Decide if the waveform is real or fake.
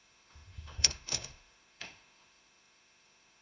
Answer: fake